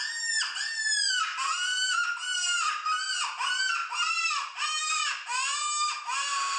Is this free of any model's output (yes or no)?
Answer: yes